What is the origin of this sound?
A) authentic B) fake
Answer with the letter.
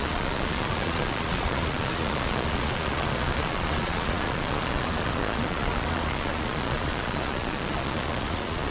B